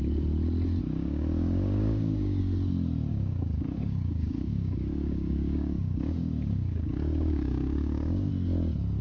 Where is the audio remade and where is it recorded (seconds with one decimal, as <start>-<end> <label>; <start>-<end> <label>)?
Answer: 0.0-0.8 recorded; 0.8-2.4 remade; 2.4-3.1 recorded; 3.1-8.3 remade; 8.3-9.0 recorded